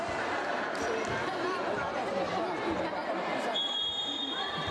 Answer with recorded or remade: recorded